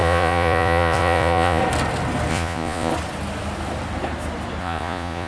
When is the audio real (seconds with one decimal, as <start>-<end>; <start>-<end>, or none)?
1.6-2.3; 2.9-4.6